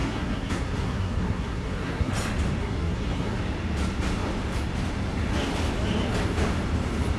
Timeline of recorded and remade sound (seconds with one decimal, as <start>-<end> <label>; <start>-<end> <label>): 0.0-2.1 remade; 2.1-2.6 recorded; 2.6-3.4 remade; 3.4-7.2 recorded